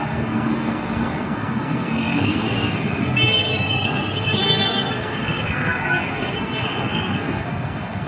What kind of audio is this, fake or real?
fake